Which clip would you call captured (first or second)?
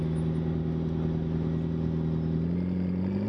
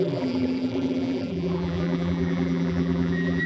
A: first